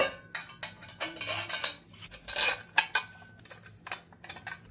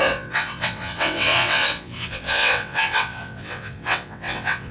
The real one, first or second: first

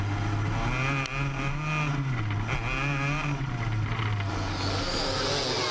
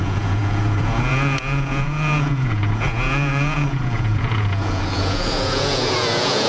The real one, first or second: first